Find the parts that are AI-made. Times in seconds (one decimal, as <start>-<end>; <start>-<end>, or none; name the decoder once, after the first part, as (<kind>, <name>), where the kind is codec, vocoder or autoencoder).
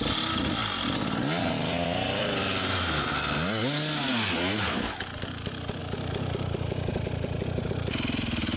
none